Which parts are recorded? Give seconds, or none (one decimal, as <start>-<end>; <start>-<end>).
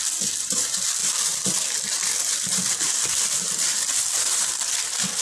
none